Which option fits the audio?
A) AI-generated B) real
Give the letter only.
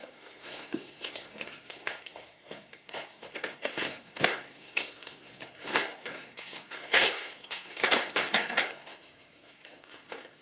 A